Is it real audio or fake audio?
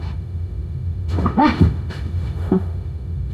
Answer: fake